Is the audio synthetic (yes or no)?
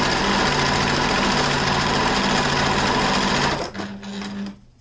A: no